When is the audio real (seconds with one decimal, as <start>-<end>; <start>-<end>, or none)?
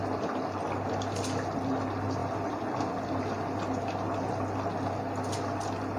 0.0-6.0